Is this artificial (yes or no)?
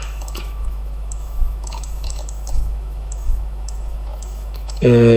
yes